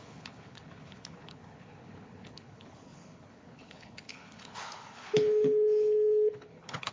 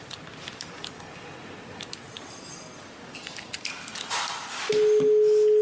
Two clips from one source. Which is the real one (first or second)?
second